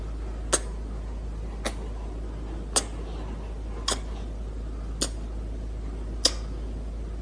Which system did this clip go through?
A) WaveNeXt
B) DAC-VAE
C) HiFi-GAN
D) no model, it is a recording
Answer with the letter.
D